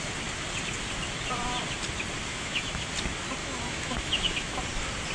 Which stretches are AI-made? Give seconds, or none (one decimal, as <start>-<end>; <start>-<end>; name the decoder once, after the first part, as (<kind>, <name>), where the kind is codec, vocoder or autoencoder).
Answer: 2.3-2.9 (autoencoder, DAC-VAE); 3.4-4.6